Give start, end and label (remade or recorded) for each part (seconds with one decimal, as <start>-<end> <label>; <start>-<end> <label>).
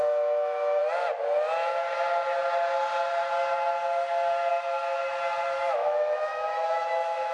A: 0.0-0.8 remade; 0.8-4.5 recorded; 4.5-5.0 remade; 5.0-5.7 recorded; 5.7-7.3 remade